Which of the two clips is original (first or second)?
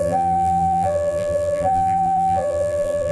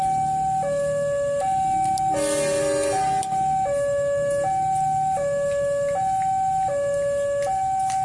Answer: second